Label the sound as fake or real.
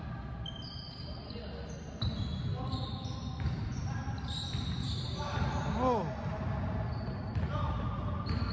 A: real